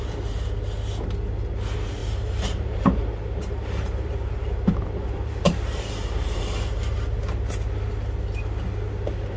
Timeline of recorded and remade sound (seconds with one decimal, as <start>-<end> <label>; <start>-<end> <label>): 0.0-2.0 recorded; 2.0-6.4 remade; 6.4-9.4 recorded